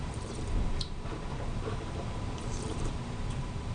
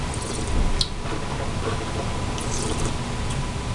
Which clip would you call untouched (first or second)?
second